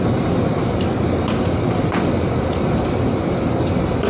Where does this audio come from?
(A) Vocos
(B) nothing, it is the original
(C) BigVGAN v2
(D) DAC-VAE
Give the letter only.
B